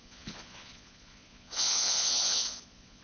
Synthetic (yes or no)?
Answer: yes